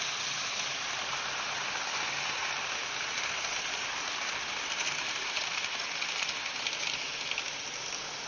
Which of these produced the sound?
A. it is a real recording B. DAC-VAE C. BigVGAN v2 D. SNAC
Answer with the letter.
A